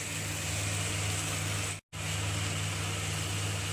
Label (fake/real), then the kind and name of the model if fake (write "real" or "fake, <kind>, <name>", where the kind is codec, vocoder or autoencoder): real